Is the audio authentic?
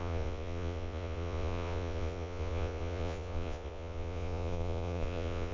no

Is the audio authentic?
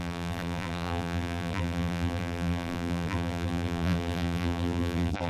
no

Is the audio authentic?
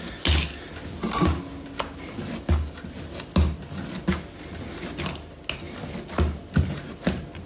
yes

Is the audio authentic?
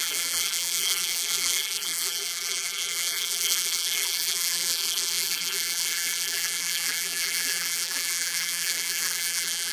no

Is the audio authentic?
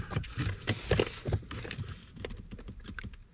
yes